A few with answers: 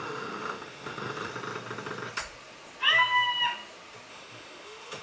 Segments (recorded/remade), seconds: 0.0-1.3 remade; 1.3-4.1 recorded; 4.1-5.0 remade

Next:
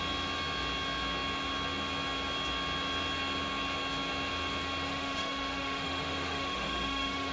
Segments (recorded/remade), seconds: 0.0-4.9 recorded; 4.9-7.3 remade

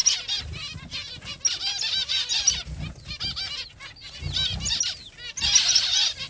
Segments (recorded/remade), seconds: 0.0-6.3 recorded

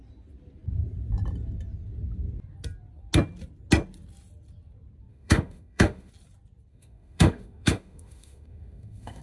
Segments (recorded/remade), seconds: 0.0-5.1 recorded; 5.1-6.1 remade; 6.1-6.7 recorded; 6.7-9.2 remade

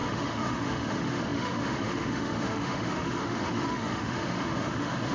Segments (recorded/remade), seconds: 0.0-5.1 remade